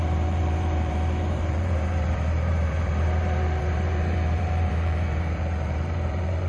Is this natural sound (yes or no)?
no